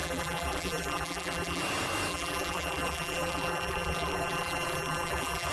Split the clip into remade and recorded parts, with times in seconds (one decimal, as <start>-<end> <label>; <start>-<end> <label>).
0.0-1.6 remade; 1.6-2.1 recorded; 2.1-5.5 remade